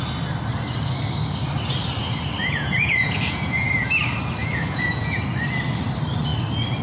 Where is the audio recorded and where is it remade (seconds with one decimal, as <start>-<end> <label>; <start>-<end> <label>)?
0.0-2.4 recorded; 2.4-3.9 remade; 3.9-4.4 recorded; 4.4-5.2 remade; 5.2-6.8 recorded